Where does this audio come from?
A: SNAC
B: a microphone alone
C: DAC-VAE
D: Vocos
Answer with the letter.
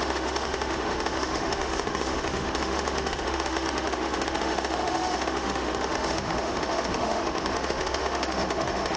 C